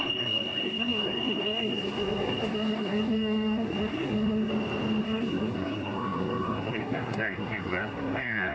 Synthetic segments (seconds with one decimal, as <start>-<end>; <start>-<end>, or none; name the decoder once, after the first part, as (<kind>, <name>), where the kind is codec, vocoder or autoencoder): 0.0-4.5 (codec, SNAC); 5.0-8.5

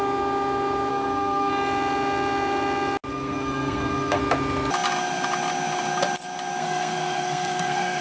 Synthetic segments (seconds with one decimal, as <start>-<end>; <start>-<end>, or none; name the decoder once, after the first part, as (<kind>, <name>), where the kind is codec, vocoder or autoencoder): 0.9-1.5 (codec, SNAC); 3.1-4.2; 6.6-8.0